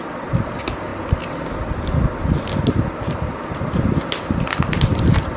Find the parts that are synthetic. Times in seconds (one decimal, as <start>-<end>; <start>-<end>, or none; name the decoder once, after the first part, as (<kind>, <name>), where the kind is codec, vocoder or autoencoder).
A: none